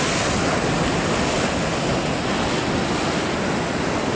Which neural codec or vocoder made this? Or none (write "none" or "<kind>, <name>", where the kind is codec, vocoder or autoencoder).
none